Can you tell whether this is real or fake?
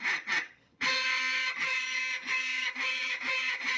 fake